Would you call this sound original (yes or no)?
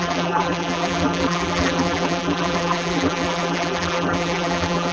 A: no